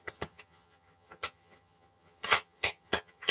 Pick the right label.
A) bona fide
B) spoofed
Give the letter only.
B